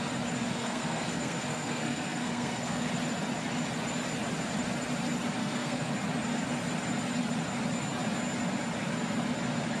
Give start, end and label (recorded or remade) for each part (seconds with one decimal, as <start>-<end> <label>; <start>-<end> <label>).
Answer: 0.0-0.6 recorded; 0.6-2.9 remade; 2.9-5.4 recorded; 5.4-5.9 remade; 5.9-9.8 recorded